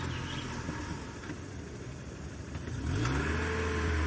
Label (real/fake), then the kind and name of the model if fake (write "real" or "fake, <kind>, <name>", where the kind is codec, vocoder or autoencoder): real